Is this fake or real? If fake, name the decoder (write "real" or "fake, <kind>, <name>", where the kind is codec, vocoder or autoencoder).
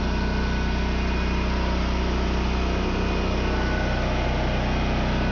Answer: real